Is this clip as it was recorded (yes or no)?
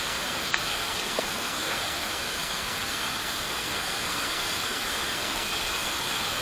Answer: no